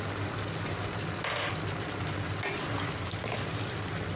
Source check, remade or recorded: recorded